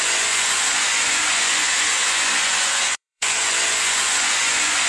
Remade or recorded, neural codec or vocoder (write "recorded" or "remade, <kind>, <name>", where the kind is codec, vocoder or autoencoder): remade, vocoder, Vocos